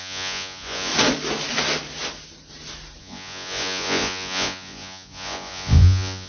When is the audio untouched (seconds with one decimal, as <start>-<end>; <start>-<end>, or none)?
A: 0.9-3.0